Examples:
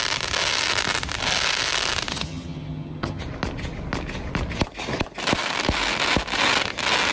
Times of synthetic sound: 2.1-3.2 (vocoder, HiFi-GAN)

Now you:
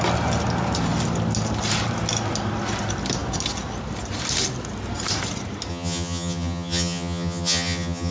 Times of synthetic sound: 5.7-8.1 (vocoder, HiFi-GAN)

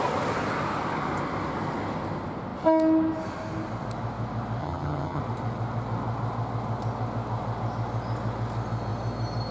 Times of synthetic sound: 4.6-5.2 (vocoder, HiFi-GAN)